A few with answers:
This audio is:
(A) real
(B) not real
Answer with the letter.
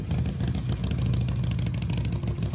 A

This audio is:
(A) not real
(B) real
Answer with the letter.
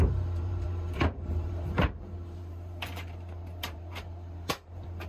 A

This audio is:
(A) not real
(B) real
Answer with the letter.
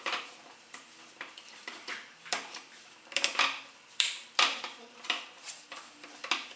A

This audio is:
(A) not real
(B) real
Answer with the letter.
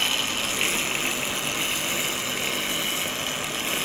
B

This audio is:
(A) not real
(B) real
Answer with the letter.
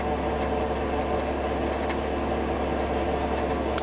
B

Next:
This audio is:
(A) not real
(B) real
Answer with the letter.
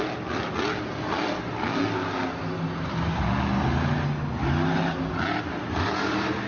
B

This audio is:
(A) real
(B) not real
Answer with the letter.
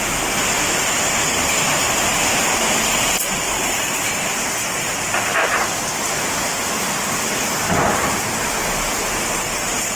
A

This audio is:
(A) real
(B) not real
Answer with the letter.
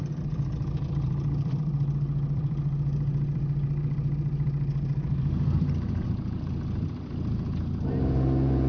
B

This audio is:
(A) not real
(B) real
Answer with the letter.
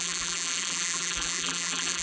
A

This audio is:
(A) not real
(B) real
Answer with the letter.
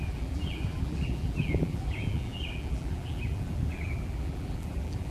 A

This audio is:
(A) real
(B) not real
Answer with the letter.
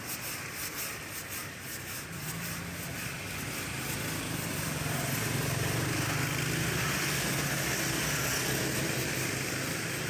A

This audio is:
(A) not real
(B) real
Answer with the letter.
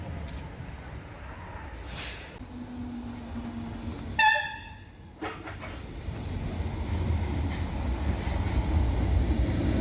B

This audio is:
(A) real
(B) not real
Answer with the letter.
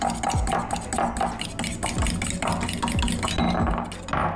A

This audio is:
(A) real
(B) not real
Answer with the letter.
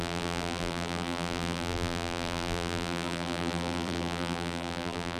B